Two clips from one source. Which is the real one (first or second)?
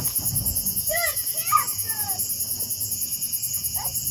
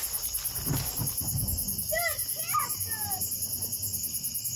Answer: second